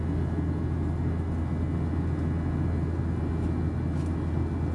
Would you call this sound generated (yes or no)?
no